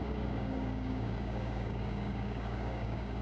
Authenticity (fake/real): fake